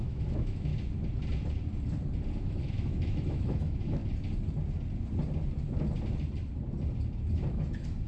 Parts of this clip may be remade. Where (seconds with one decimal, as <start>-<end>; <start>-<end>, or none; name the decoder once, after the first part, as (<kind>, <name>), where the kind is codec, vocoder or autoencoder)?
0.0-0.7 (autoencoder, DAC-VAE); 2.4-4.0; 7.5-8.1